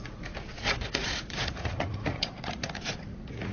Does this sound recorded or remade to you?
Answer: remade